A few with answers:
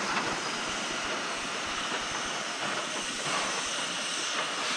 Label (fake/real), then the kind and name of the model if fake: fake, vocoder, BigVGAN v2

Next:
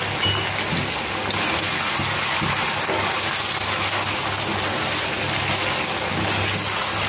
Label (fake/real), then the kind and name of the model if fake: real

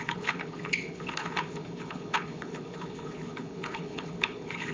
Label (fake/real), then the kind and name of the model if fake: fake, codec, HILCodec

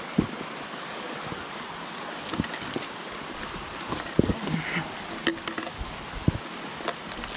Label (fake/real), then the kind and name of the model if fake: real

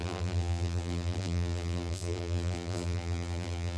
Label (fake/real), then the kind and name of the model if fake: fake, vocoder, BigVGAN v2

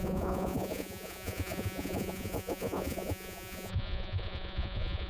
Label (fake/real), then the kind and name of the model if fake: fake, vocoder, Vocos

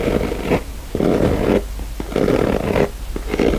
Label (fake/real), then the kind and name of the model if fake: real